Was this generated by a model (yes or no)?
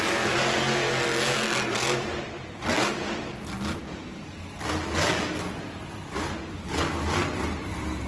no